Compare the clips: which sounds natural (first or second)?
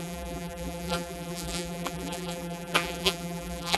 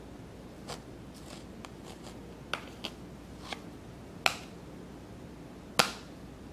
second